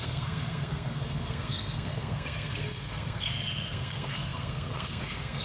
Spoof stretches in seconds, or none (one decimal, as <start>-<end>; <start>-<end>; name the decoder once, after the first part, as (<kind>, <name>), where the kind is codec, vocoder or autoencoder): 0.0-5.4 (codec, SNAC)